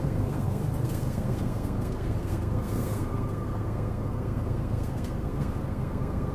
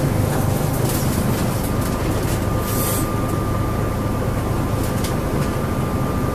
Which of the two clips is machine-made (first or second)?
first